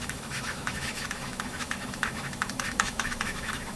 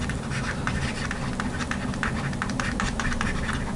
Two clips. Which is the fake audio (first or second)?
first